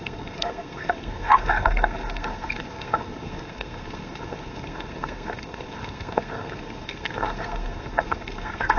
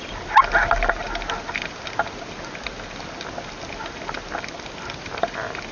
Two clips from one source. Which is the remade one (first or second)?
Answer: first